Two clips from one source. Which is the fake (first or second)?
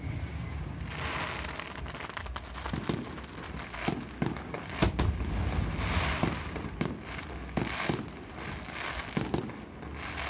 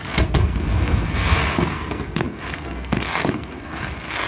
second